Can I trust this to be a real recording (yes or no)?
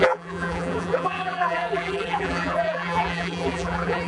no